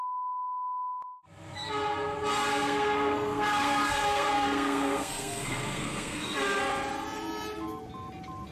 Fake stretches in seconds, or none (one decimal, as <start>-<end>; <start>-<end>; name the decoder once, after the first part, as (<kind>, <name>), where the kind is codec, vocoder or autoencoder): 2.5-6.6 (codec, SNAC)